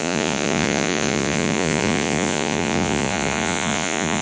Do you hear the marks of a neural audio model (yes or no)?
yes